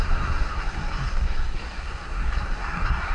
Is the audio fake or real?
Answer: fake